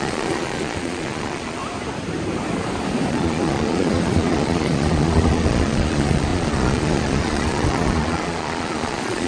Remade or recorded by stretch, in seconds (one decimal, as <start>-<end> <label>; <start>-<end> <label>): 0.0-1.6 remade; 1.6-3.1 recorded; 3.1-9.3 remade